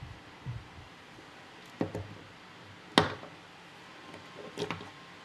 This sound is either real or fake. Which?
real